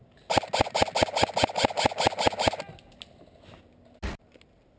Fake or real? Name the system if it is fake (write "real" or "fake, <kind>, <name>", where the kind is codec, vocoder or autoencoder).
real